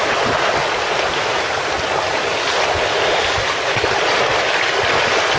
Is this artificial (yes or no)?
no